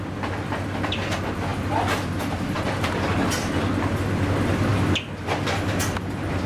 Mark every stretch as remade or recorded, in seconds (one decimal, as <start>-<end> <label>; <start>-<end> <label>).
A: 0.0-6.5 recorded